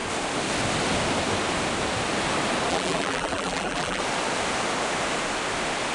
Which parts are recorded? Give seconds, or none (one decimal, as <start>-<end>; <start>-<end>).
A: 0.0-2.7; 4.0-5.9